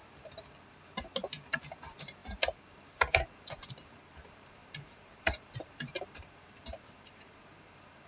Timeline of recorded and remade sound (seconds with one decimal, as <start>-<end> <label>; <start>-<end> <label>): 0.0-0.7 recorded; 0.7-8.1 remade